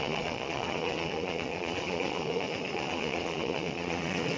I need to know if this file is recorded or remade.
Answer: remade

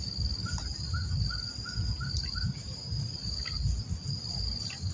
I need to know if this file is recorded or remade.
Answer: recorded